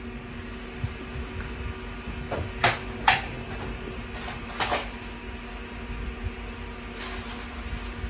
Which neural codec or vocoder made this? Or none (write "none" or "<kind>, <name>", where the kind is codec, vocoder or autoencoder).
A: none